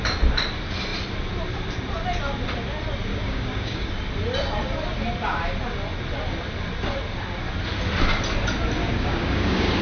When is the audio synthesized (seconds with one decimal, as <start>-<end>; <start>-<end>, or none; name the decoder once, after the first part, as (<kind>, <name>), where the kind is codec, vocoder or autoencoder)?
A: 3.1-3.9 (codec, DAC); 8.8-9.8